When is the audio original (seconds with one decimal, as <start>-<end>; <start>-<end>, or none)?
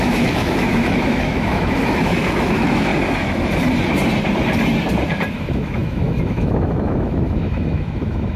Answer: 2.9-5.3